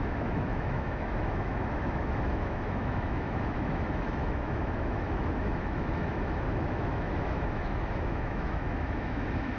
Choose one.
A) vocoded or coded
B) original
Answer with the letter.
A